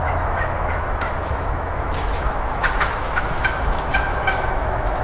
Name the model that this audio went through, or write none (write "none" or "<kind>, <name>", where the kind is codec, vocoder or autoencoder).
autoencoder, DAC-VAE